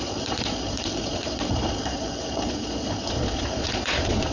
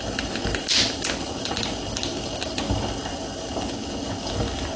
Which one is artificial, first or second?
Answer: first